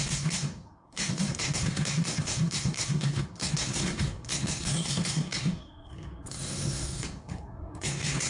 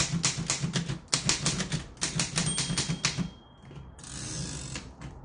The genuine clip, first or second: second